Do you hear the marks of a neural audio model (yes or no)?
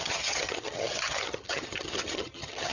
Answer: yes